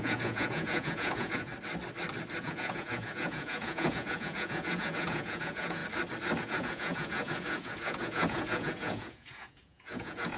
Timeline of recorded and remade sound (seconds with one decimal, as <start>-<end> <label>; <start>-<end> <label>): 0.0-1.5 remade; 1.5-2.4 recorded; 2.4-5.8 remade; 5.8-6.4 recorded; 6.4-10.4 remade